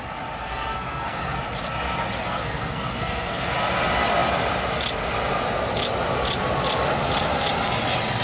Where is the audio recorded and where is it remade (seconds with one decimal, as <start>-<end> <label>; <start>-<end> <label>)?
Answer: 0.0-0.4 recorded; 0.4-1.4 remade; 1.4-2.2 recorded; 2.2-3.5 remade; 3.5-8.2 recorded